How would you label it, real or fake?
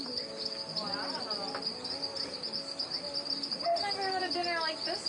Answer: real